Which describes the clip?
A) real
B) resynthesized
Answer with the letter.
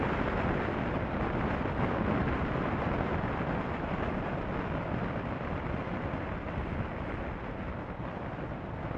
A